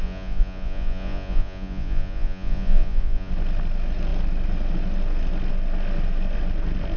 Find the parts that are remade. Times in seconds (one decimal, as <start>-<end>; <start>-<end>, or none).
0.0-3.3